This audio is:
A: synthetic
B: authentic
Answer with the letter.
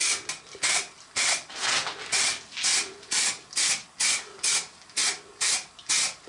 B